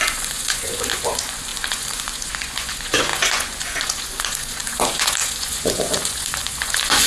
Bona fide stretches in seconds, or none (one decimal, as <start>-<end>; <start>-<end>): none